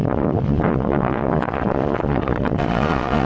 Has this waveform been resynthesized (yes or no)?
yes